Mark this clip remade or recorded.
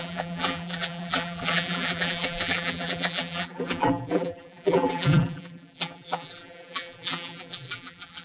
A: remade